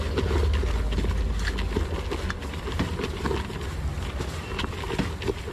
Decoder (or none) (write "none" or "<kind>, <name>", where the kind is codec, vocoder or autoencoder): none